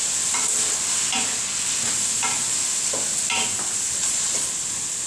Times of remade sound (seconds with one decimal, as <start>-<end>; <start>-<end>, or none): 4.0-4.5